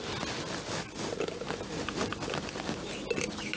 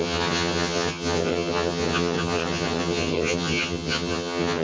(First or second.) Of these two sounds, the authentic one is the first